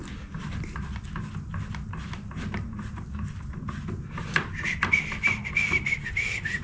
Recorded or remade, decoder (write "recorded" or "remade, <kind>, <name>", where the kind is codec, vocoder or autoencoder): recorded